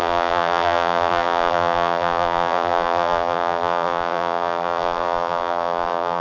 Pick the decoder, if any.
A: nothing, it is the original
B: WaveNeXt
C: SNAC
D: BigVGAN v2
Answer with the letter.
D